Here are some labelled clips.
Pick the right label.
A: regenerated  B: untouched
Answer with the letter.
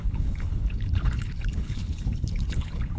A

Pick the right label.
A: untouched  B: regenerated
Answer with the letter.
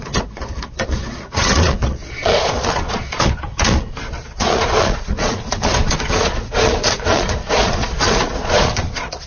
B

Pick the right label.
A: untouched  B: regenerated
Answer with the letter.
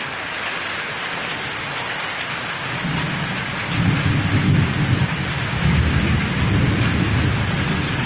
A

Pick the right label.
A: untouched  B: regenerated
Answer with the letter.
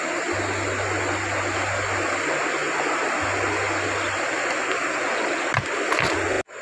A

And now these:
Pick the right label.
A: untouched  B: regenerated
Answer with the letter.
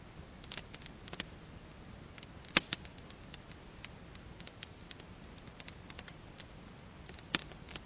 A